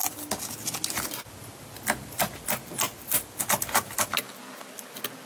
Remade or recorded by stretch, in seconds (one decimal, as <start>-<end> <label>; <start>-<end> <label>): 0.0-5.3 recorded